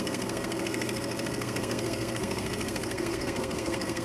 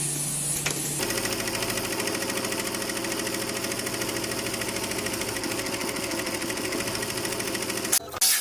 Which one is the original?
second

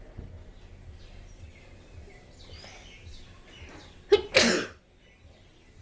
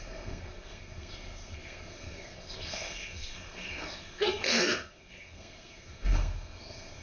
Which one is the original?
first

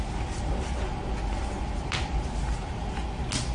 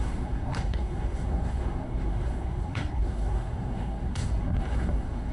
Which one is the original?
first